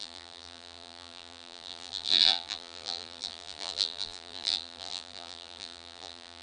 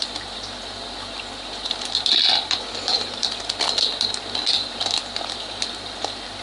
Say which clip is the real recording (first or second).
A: second